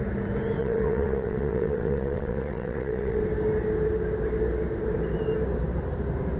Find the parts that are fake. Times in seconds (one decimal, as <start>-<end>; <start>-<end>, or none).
0.6-3.2